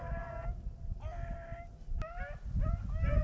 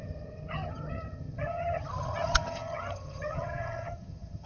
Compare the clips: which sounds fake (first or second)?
second